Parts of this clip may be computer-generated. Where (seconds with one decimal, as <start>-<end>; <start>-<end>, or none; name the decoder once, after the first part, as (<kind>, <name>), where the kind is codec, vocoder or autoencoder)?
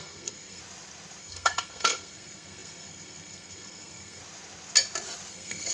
0.0-0.6 (codec, SNAC); 1.2-4.2; 5.3-5.7